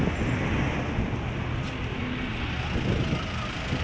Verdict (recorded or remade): recorded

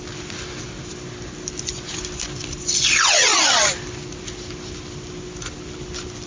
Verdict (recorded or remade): recorded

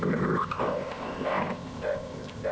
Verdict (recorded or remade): remade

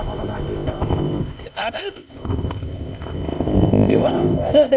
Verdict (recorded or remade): remade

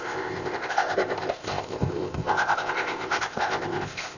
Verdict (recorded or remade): remade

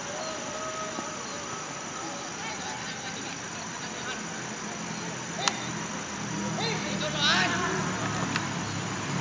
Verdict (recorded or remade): recorded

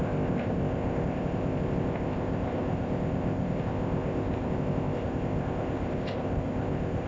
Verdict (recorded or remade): remade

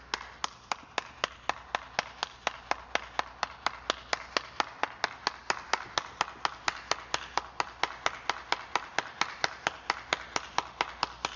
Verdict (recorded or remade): recorded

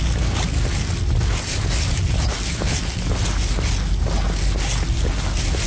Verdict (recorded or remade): recorded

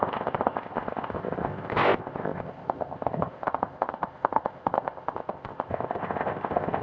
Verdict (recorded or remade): remade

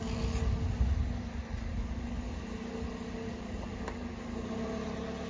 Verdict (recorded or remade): recorded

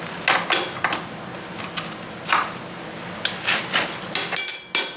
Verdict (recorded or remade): recorded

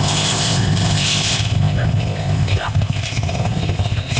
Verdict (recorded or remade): remade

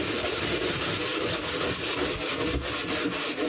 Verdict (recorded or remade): recorded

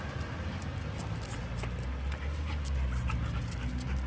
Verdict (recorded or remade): recorded